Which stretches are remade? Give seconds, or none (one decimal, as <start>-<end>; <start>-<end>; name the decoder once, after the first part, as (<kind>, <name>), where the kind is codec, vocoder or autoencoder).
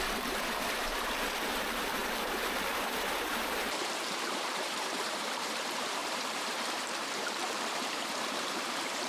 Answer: 0.0-9.1 (vocoder, BigVGAN v2)